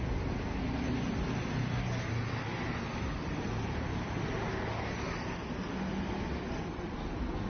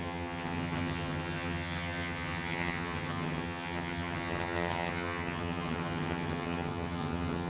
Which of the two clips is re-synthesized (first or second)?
second